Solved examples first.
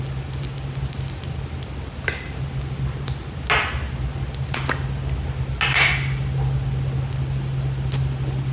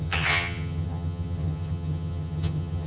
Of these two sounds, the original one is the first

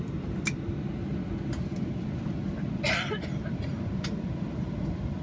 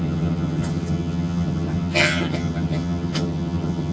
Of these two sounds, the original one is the first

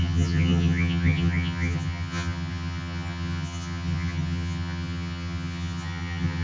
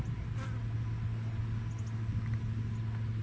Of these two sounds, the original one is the second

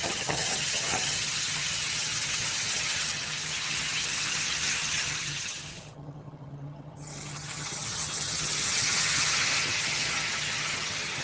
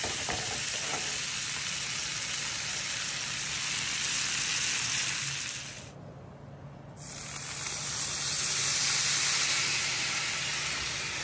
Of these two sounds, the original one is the second